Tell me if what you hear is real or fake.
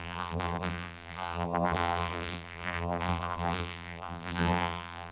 fake